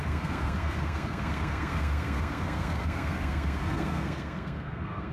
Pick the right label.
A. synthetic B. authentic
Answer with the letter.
A